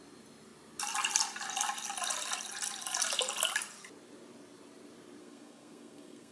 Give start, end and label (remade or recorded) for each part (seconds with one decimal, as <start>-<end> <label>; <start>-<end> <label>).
0.0-5.2 recorded; 5.2-6.3 remade